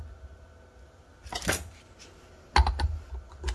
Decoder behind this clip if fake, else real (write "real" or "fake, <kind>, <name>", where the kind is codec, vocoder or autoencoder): real